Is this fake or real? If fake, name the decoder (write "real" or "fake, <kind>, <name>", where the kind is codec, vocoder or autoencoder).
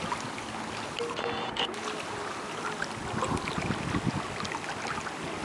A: real